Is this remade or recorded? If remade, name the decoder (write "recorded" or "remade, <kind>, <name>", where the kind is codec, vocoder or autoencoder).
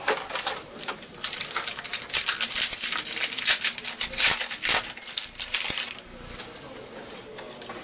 recorded